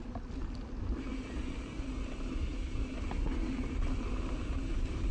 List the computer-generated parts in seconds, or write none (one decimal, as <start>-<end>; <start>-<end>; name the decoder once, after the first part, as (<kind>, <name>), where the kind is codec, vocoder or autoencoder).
none